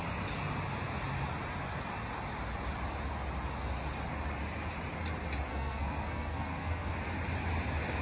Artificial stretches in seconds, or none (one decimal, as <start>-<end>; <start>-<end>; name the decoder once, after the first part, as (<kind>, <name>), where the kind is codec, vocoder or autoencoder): 5.5-6.9 (codec, SNAC)